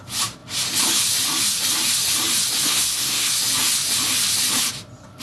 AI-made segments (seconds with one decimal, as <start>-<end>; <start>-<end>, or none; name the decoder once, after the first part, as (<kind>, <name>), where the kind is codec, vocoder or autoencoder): 2.6-3.3 (codec, SNAC)